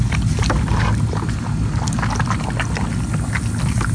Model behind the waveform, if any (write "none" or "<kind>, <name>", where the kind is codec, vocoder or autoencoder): none